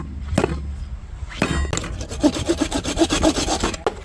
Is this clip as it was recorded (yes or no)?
yes